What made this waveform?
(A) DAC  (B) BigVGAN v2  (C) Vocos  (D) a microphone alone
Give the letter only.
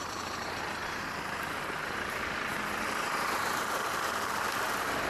B